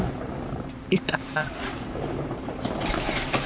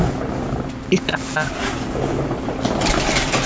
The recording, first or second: second